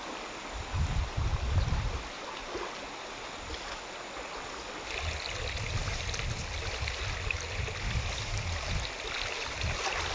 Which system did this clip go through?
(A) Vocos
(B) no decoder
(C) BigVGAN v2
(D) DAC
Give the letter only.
B